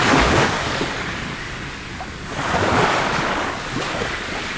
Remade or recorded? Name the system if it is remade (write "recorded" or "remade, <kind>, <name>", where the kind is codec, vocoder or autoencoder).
remade, codec, DAC